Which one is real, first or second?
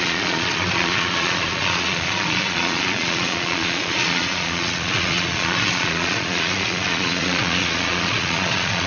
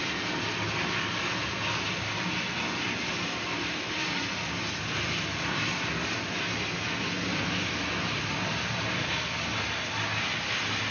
second